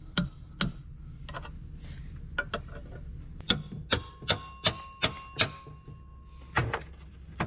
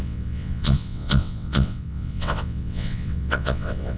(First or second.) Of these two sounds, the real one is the first